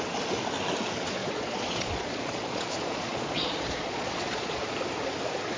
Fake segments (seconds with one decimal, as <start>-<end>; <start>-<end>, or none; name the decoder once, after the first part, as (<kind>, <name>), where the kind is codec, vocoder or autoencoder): 1.2-4.6 (vocoder, Vocos)